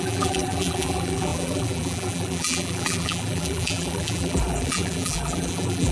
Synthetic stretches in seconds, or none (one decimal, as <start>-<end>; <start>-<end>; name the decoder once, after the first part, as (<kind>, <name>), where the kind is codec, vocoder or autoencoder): 0.0-5.9 (vocoder, BigVGAN v2)